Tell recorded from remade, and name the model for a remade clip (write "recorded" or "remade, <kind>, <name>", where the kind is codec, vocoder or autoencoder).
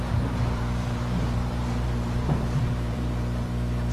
remade, vocoder, BigVGAN v2